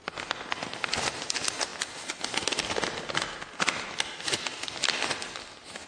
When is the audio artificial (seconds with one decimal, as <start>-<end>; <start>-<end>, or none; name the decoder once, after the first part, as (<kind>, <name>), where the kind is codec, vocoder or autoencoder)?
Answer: none